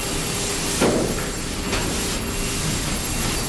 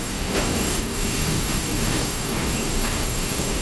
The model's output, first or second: second